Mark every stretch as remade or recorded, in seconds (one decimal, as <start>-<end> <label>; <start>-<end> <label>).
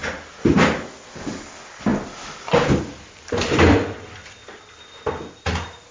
0.0-5.9 recorded